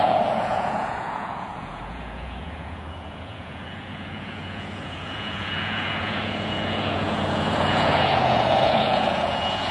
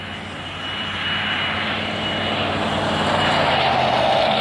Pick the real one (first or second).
second